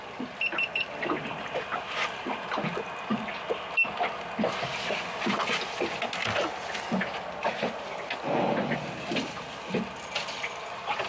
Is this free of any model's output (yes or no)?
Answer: yes